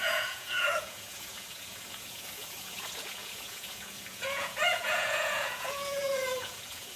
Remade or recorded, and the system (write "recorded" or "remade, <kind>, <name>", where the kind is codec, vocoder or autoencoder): remade, vocoder, Vocos